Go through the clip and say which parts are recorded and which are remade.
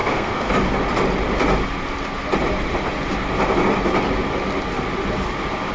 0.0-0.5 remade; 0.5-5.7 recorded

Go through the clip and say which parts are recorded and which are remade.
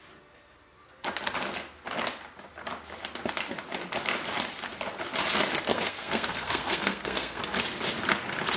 0.0-5.7 recorded; 5.7-7.4 remade; 7.4-8.6 recorded